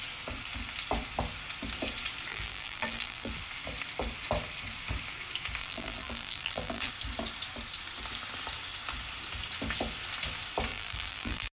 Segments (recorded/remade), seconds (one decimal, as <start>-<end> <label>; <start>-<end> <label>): 0.0-2.3 recorded; 2.3-3.3 remade; 3.3-5.6 recorded; 5.6-6.9 remade; 6.9-10.7 recorded; 10.7-11.5 remade